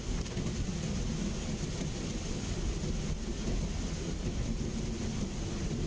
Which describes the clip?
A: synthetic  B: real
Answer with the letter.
B